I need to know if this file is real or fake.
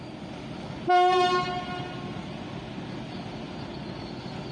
real